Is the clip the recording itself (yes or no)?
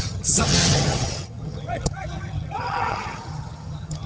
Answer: no